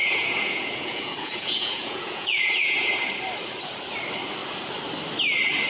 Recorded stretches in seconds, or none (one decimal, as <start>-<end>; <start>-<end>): 3.1-5.7